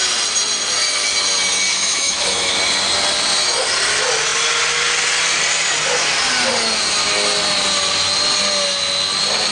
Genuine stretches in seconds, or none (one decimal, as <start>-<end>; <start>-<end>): 0.0-1.7; 2.5-9.5